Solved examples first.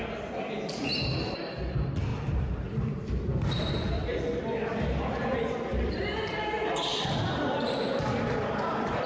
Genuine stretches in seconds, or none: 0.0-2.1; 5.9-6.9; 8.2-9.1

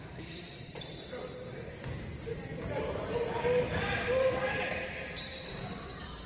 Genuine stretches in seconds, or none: 5.3-6.3

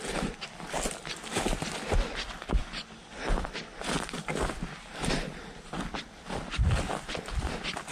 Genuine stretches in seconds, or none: 0.0-7.9

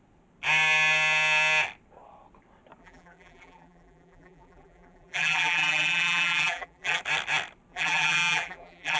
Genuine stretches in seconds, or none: 0.0-2.8; 7.0-7.7

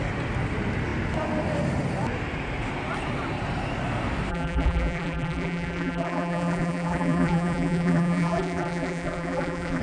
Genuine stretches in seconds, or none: 0.0-4.3

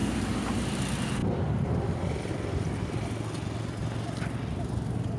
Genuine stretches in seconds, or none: 0.6-1.2; 2.3-5.2

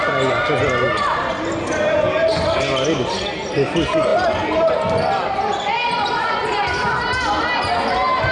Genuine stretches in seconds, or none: 0.0-4.1; 6.4-8.3